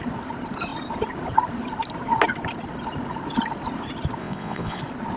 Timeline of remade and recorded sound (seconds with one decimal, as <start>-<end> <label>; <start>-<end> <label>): 0.0-4.2 recorded; 4.2-4.8 remade; 4.8-5.2 recorded